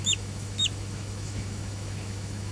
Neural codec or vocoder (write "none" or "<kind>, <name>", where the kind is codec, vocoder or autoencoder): autoencoder, DAC-VAE